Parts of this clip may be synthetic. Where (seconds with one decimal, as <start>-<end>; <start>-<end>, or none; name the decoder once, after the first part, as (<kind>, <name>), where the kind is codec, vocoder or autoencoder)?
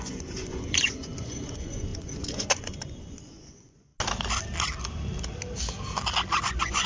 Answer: 0.0-3.9 (vocoder, Vocos); 6.4-6.9